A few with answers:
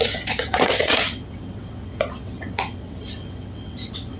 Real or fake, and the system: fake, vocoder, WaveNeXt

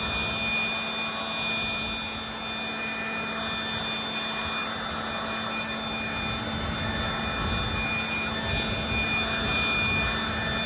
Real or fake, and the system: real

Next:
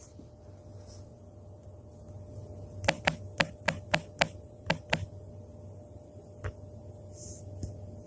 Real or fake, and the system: real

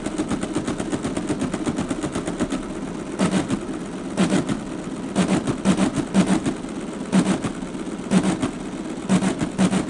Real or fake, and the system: real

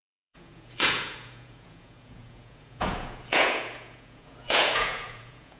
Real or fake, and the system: fake, vocoder, Vocos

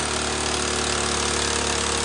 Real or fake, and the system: real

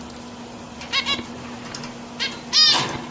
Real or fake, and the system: real